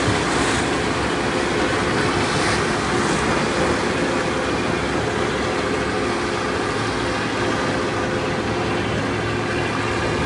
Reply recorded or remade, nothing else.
recorded